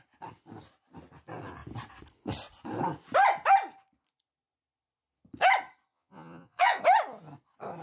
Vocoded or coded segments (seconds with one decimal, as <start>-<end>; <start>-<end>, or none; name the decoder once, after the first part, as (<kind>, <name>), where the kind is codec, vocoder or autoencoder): 5.9-6.8 (vocoder, Vocos)